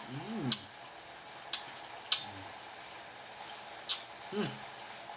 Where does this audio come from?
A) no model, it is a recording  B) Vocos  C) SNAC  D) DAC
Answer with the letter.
A